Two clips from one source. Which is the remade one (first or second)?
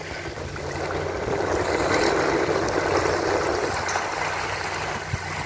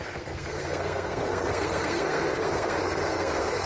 second